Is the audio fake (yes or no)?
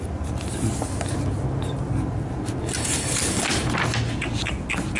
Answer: no